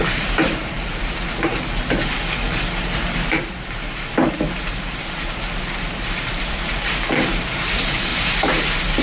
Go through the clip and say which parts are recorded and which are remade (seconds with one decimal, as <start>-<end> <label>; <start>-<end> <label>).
0.0-1.5 remade; 1.5-2.0 recorded; 2.0-8.1 remade; 8.1-9.0 recorded